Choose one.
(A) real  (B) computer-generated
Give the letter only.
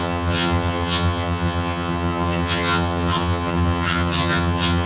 B